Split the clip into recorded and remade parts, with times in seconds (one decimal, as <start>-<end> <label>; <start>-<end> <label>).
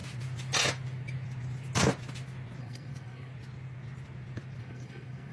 0.0-2.6 recorded; 2.6-3.3 remade; 3.3-4.6 recorded; 4.6-5.3 remade